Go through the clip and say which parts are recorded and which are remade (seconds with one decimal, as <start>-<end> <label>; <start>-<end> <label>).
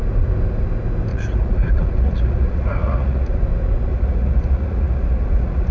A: 0.0-1.1 recorded; 1.1-3.4 remade; 3.4-3.9 recorded; 3.9-5.7 remade